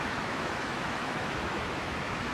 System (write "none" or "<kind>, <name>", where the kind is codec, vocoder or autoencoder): autoencoder, DAC-VAE